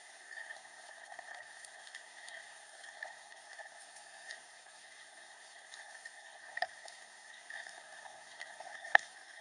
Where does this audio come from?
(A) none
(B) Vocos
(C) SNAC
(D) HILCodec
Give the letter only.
C